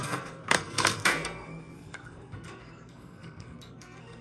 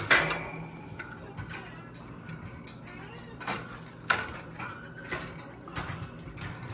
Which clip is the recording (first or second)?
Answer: second